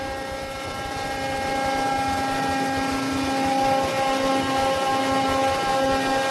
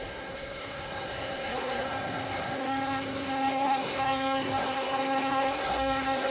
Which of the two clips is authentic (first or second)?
first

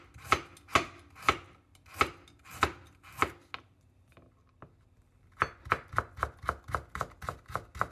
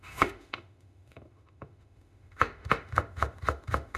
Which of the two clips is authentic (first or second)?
first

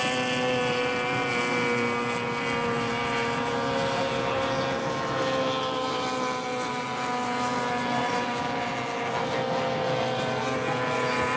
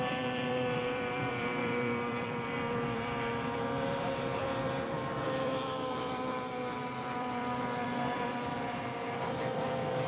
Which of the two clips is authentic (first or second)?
first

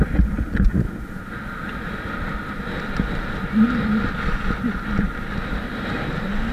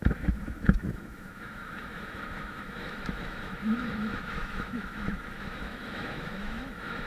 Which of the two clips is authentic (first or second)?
first